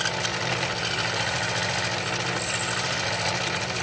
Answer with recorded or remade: recorded